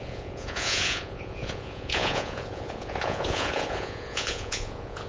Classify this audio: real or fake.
fake